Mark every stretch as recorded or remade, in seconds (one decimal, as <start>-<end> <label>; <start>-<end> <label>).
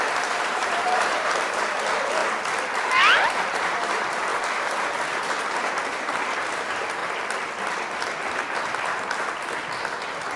0.0-2.2 remade; 2.2-3.4 recorded; 3.4-4.3 remade; 4.3-5.4 recorded; 5.4-7.0 remade; 7.0-10.4 recorded